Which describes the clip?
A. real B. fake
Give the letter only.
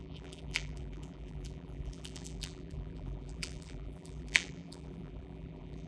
B